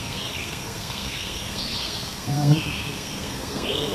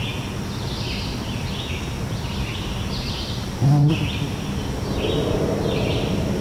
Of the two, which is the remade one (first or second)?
first